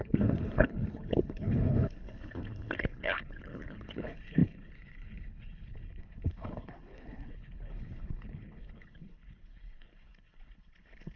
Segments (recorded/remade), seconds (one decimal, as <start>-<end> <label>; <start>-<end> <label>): 0.0-11.2 remade